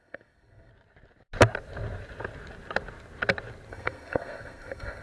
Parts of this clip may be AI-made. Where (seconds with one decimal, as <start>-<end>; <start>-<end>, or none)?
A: 0.0-0.7; 3.7-5.0